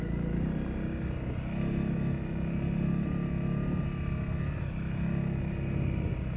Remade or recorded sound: recorded